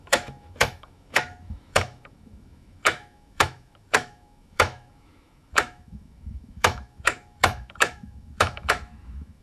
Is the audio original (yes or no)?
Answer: no